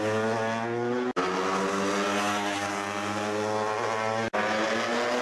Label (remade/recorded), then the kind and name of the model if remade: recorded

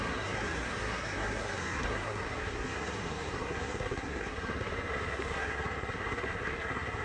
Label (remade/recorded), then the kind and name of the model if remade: remade, codec, SNAC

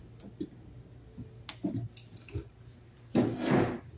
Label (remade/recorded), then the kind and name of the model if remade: recorded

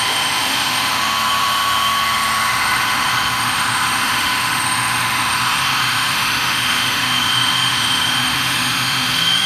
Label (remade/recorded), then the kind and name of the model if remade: remade, autoencoder, DAC-VAE